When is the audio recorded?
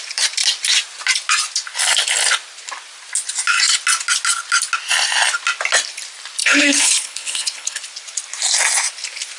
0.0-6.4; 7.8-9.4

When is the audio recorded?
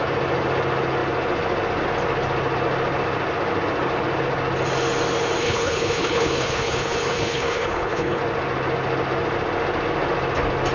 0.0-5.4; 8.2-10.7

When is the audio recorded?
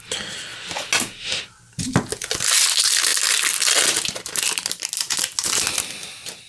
0.0-6.5